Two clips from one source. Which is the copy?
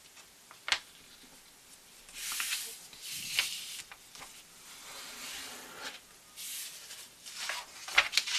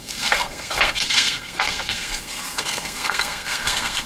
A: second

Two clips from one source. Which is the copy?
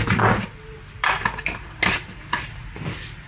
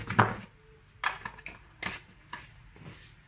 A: first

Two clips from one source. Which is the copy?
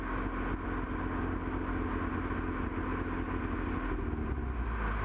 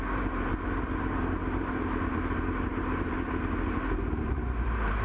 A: second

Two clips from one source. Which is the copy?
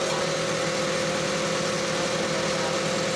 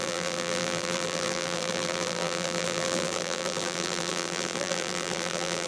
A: second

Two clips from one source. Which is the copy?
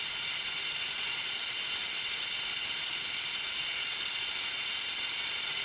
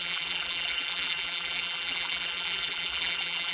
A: second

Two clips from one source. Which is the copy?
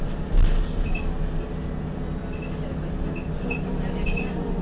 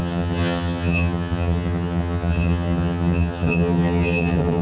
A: second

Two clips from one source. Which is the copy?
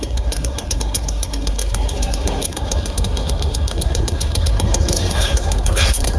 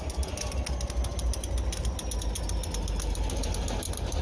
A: first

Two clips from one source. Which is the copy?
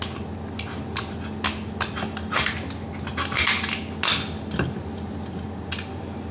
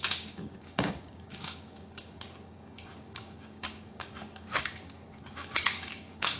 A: second